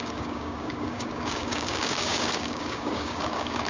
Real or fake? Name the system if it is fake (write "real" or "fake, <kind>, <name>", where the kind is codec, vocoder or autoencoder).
fake, codec, DAC